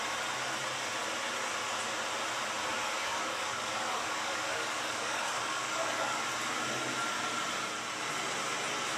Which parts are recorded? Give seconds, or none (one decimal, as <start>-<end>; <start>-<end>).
0.0-3.0; 6.2-9.0